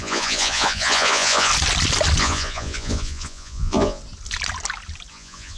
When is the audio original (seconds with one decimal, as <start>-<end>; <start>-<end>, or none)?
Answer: 1.5-2.2; 4.0-5.1